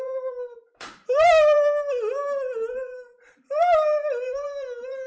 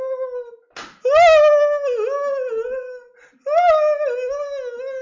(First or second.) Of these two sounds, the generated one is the first